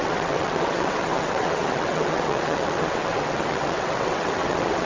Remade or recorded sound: remade